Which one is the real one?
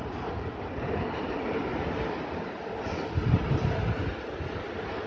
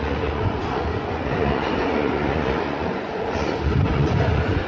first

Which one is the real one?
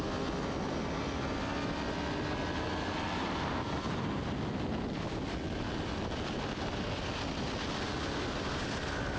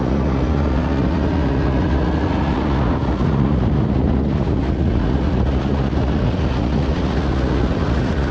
first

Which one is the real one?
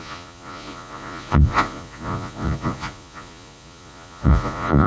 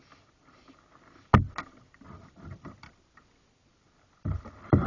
second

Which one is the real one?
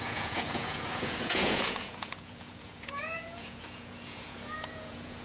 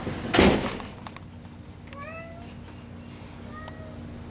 second